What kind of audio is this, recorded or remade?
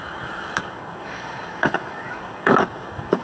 remade